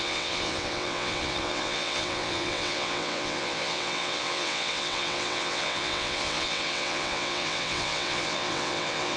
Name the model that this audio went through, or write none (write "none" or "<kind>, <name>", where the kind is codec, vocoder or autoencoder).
vocoder, WaveNeXt